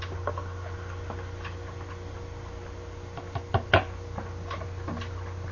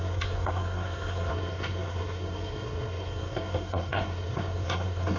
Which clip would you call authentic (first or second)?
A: first